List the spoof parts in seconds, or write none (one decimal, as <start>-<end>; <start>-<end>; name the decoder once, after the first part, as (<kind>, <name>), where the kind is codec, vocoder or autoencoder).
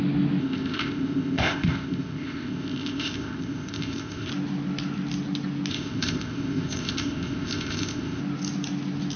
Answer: 0.4-4.3 (codec, ZipCodec); 5.7-8.2